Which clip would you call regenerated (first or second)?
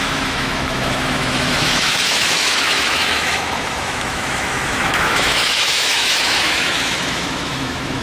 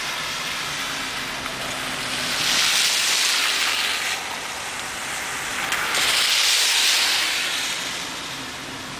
first